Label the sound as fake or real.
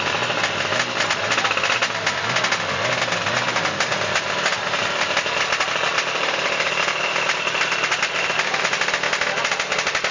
real